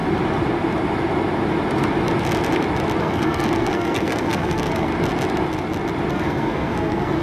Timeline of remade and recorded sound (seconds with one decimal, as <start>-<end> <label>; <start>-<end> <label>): 0.0-3.0 recorded; 3.0-4.9 remade; 4.9-6.1 recorded; 6.1-7.2 remade